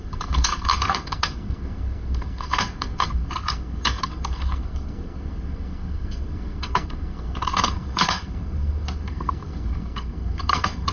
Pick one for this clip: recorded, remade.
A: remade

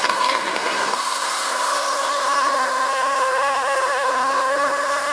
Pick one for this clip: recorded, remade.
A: remade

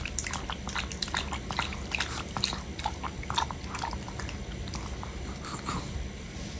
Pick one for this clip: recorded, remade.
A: recorded